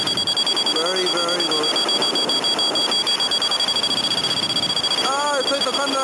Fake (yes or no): no